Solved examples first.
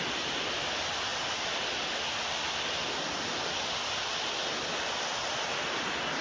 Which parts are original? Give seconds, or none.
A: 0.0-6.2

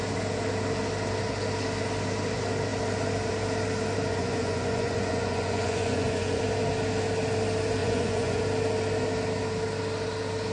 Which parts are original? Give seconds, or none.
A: 0.0-4.1; 6.4-7.8; 8.4-10.5